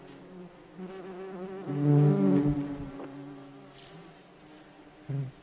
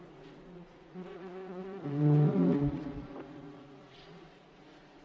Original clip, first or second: first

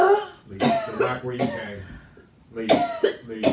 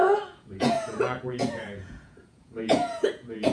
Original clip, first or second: first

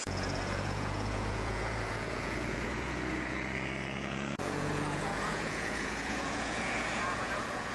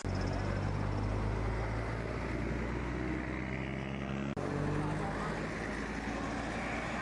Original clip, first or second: second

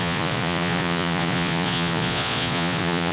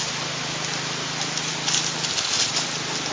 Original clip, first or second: second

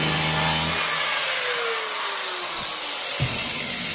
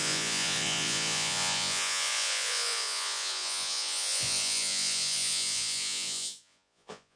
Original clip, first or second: first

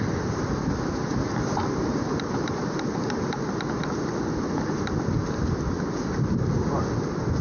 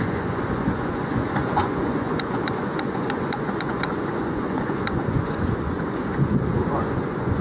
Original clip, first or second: first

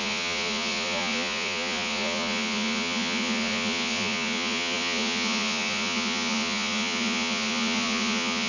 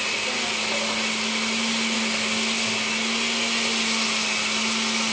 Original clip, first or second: second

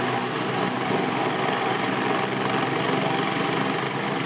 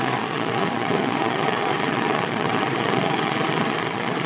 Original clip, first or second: first